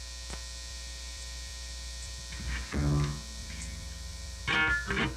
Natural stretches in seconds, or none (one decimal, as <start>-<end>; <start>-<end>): 0.0-0.7; 2.2-3.4; 4.4-5.2